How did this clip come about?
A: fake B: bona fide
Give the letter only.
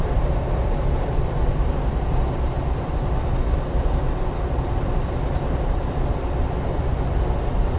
A